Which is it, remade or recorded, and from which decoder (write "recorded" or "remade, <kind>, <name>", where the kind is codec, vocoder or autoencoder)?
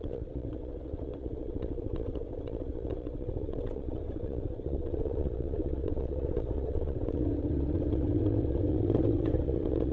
remade, vocoder, WaveNeXt